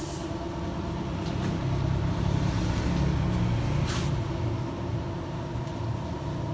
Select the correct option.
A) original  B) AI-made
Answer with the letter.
A